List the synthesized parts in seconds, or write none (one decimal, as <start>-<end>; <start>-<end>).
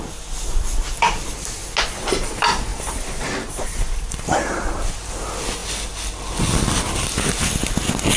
2.7-4.9